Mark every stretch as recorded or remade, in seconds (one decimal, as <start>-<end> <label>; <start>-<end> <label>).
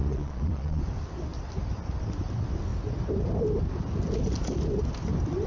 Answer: 0.0-0.8 remade; 0.8-5.5 recorded